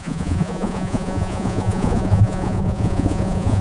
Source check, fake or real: fake